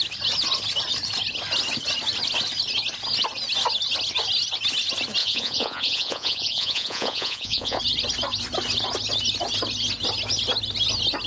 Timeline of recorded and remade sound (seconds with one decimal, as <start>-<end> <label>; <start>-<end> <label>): 0.0-5.2 recorded; 5.2-7.8 remade; 7.8-11.3 recorded